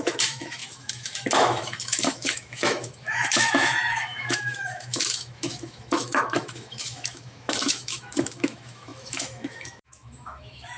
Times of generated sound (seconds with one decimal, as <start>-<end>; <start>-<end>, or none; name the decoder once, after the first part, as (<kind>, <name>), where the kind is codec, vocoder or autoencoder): 0.0-10.8 (autoencoder, DAC-VAE)